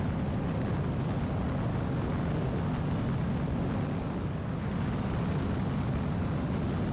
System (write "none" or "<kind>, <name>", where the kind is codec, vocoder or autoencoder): none